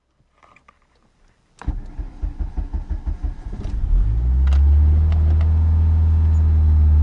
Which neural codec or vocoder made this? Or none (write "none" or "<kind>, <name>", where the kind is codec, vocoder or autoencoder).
none